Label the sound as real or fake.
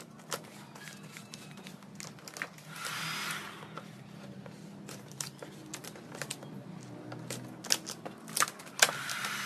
real